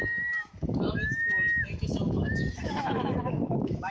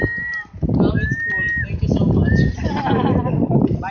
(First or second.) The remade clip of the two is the first